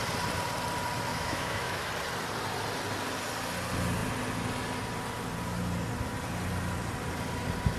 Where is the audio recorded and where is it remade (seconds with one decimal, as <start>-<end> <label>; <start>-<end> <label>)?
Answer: 0.0-1.1 recorded; 1.1-1.9 remade; 1.9-7.8 recorded